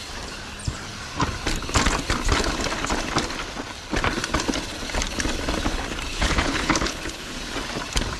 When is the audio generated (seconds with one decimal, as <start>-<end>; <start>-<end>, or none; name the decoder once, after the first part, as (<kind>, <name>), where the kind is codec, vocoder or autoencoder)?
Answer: 6.1-7.3 (codec, HILCodec)